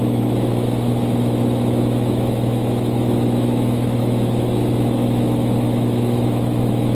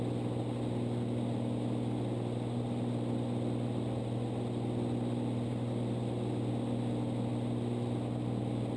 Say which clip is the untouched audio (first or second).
second